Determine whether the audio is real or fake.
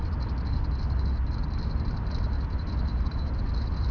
real